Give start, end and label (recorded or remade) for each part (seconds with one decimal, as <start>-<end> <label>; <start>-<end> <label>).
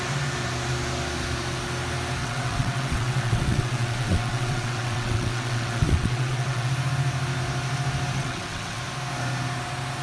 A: 0.0-2.2 recorded; 2.2-6.7 remade; 6.7-8.2 recorded; 8.2-8.8 remade; 8.8-10.0 recorded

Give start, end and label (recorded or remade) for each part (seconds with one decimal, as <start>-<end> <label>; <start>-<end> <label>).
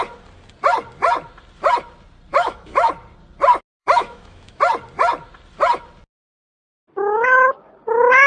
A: 0.0-2.3 recorded; 2.3-2.9 remade; 2.9-3.8 recorded; 3.8-4.6 remade; 4.6-8.3 recorded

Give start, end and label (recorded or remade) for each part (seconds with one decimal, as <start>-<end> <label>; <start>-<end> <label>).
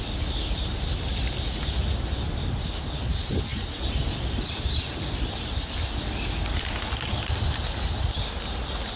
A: 0.0-1.1 recorded; 1.1-1.7 remade; 1.7-9.0 recorded